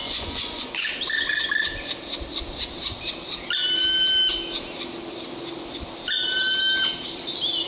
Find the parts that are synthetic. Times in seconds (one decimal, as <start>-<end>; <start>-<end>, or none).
0.0-0.9